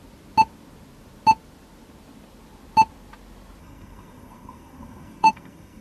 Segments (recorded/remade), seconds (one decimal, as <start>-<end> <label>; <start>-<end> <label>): 0.0-3.6 recorded; 3.6-5.8 remade